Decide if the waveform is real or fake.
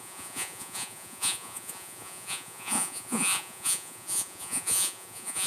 fake